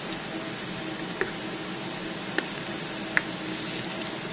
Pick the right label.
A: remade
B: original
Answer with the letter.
B